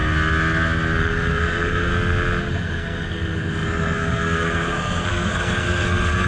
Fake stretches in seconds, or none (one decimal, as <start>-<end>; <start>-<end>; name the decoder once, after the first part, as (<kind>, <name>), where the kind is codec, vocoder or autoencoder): 1.0-1.9 (codec, SNAC); 2.5-6.3